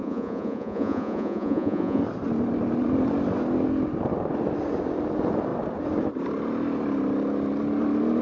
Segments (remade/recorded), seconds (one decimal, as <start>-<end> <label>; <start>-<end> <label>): 0.0-2.0 remade; 2.0-8.2 recorded